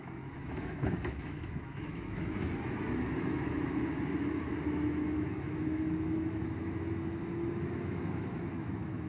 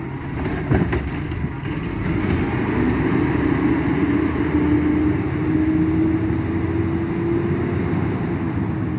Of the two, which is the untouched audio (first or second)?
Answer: second